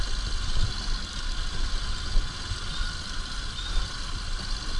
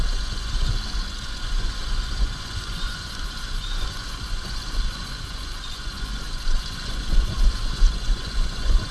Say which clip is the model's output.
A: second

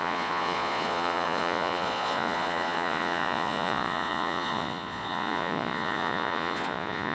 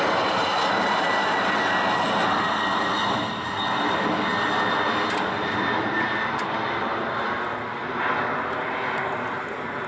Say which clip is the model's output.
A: first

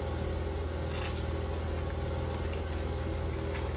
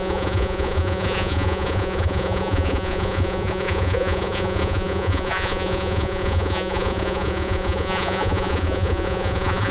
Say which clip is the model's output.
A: second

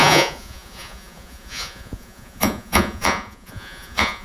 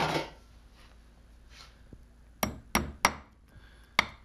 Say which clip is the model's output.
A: first